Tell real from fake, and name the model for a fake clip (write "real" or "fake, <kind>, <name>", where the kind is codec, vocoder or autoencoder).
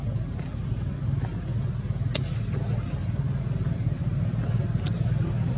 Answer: real